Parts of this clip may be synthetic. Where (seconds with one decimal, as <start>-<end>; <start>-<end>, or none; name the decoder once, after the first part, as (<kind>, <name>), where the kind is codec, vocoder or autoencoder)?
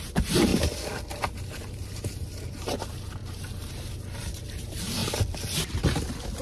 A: 0.0-0.5 (vocoder, BigVGAN v2); 1.3-3.2; 3.7-5.0